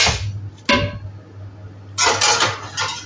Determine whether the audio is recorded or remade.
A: recorded